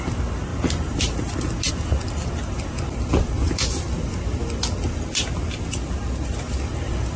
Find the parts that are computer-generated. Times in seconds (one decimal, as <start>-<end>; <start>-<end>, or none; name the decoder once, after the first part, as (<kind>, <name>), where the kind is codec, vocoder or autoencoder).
none

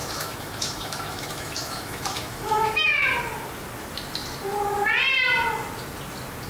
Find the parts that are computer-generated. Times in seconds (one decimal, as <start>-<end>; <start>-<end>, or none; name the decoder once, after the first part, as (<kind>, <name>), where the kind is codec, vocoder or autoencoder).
0.0-3.2 (autoencoder, DAC-VAE)

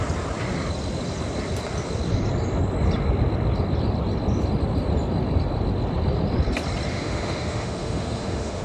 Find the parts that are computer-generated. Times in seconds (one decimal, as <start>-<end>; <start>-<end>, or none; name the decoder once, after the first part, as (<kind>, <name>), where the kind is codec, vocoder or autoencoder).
6.9-8.6 (autoencoder, DAC-VAE)